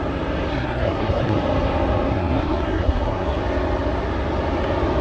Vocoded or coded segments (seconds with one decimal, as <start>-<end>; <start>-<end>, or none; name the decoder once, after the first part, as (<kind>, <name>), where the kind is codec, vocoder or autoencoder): 0.5-1.4 (codec, SNAC); 2.1-3.4